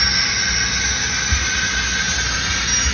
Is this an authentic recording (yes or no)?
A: yes